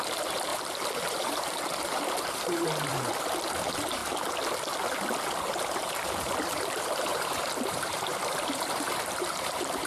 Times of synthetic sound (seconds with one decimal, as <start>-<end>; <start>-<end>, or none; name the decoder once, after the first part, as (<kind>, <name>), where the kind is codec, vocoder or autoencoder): 0.0-0.5 (vocoder, BigVGAN v2); 1.1-2.9; 3.6-4.0; 5.4-9.9